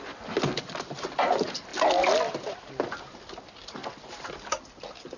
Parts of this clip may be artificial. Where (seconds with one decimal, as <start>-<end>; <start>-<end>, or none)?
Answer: none